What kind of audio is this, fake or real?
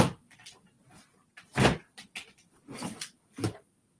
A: real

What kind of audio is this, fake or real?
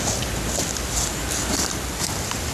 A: real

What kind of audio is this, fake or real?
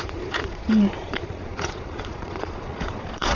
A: fake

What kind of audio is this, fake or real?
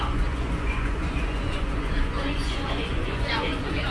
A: fake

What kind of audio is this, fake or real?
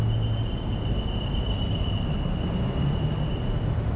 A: real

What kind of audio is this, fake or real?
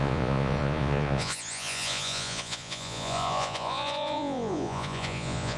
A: fake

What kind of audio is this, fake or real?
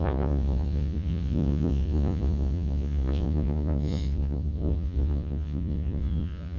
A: fake